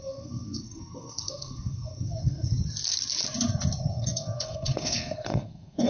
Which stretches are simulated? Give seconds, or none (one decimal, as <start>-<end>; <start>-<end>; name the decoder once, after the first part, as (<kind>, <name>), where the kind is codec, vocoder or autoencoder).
0.0-2.5 (codec, SNAC); 3.9-5.9